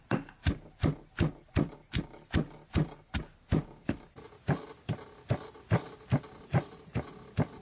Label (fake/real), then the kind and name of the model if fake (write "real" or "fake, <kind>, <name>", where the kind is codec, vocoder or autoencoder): real